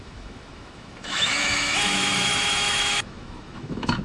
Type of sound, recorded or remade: remade